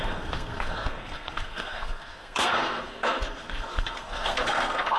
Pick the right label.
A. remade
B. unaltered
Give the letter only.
A